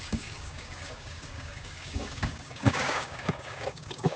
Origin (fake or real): fake